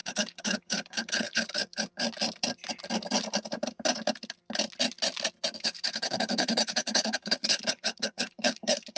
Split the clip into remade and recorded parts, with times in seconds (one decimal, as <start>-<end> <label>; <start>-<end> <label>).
0.0-1.6 remade; 1.6-5.6 recorded; 5.6-9.0 remade